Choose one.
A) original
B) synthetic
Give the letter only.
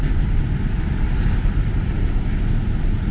A